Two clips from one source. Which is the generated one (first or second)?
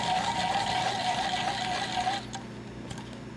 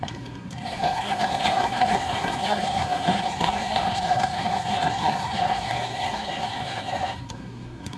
second